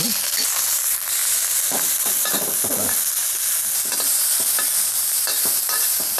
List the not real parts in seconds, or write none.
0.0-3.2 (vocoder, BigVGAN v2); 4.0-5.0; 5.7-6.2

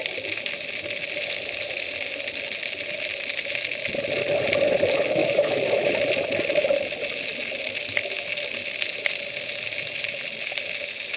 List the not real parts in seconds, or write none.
5.2-5.9 (autoencoder, DAC-VAE)